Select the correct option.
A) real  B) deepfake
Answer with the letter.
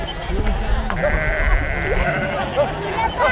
A